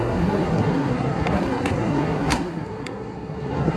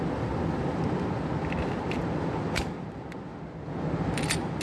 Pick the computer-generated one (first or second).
first